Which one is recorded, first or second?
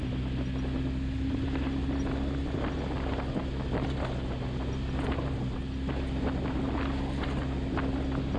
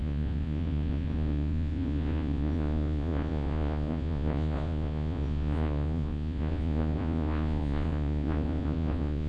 first